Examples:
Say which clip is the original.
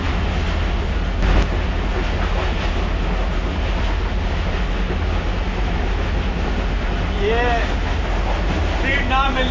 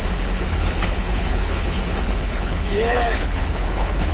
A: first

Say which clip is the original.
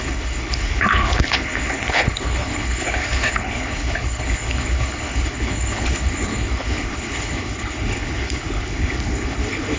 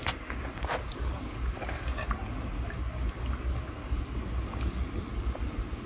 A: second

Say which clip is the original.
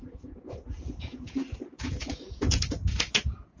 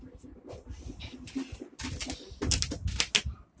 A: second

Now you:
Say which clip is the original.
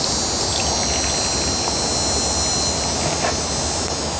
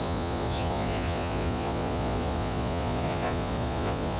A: first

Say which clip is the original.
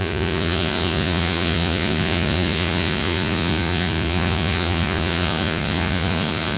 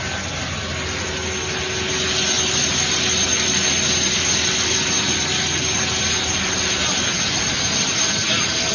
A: second